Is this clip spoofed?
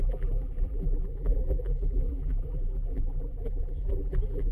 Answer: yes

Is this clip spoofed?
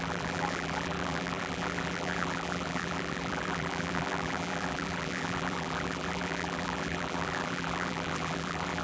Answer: yes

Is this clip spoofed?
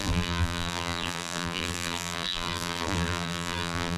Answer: yes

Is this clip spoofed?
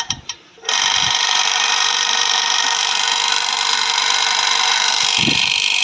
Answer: yes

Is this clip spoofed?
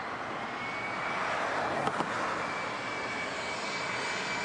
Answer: no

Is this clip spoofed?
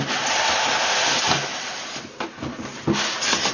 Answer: no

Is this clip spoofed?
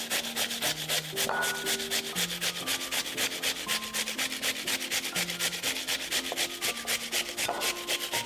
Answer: no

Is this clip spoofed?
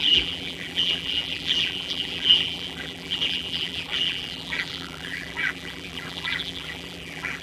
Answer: yes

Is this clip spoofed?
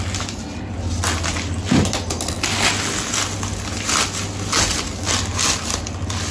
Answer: no